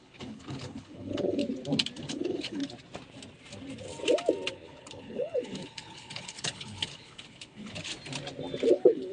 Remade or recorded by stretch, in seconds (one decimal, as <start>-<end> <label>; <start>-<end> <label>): 0.0-1.4 remade; 1.4-2.1 recorded; 2.1-2.6 remade; 2.6-4.5 recorded; 4.5-7.9 remade; 7.9-8.7 recorded; 8.7-9.1 remade